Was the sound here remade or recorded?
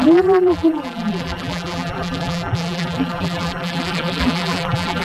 remade